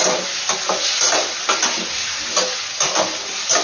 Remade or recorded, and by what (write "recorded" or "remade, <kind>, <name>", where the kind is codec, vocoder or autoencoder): recorded